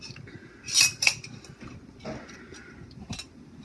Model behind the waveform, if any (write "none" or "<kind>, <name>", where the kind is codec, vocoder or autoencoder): none